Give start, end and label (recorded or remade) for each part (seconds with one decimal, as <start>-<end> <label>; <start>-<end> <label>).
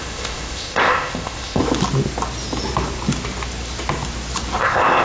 0.0-1.6 remade; 1.6-4.6 recorded; 4.6-5.0 remade